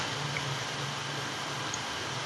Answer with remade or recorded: remade